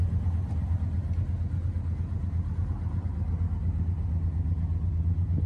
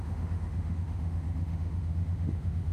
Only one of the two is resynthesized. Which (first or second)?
second